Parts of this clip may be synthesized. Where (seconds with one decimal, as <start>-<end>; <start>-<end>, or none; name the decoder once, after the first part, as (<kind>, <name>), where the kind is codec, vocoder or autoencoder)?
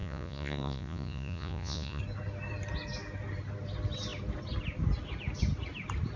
0.0-2.0 (vocoder, Vocos)